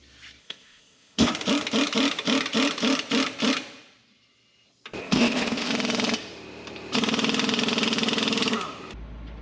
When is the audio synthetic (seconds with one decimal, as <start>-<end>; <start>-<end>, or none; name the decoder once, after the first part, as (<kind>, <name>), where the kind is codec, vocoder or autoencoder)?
0.4-1.3 (codec, ZipCodec); 5.0-5.7